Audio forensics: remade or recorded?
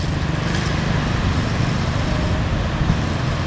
recorded